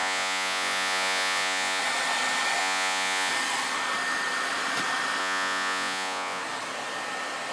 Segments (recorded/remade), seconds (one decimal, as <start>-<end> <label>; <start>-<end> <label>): 0.0-1.8 remade; 1.8-2.6 recorded; 2.6-3.3 remade; 3.3-5.2 recorded; 5.2-6.4 remade; 6.4-7.5 recorded